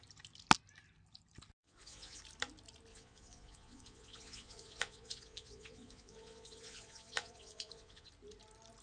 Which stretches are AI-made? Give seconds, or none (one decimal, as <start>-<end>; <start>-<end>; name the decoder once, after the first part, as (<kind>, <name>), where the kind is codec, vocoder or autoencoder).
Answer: 1.6-2.2 (vocoder, Vocos); 2.9-8.1